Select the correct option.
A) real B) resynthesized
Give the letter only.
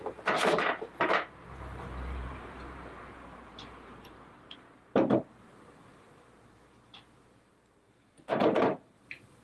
B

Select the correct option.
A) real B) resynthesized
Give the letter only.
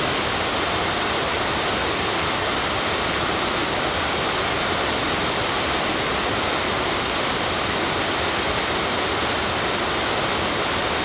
A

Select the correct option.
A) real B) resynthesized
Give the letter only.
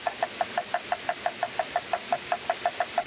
A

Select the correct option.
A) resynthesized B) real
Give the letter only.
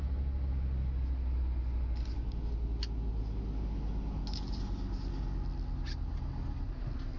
B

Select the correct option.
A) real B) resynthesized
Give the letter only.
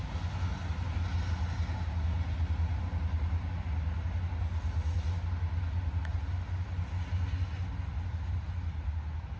A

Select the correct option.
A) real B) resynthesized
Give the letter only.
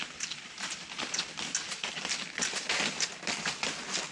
A